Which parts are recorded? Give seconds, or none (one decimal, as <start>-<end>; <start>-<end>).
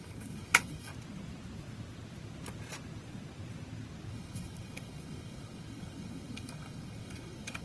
0.9-4.1